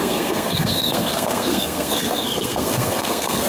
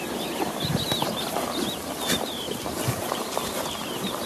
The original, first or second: second